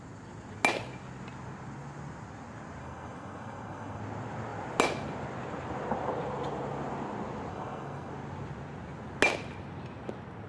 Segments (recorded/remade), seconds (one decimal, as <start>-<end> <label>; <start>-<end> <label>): 0.0-2.8 recorded; 2.8-4.0 remade; 4.0-7.5 recorded; 7.5-8.1 remade; 8.1-10.5 recorded